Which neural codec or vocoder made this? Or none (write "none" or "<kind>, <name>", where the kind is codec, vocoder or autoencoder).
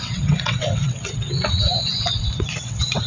vocoder, WaveNeXt